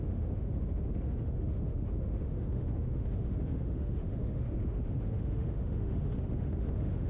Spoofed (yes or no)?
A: yes